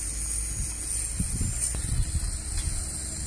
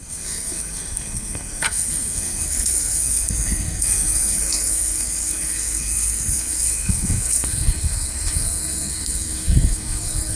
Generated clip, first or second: second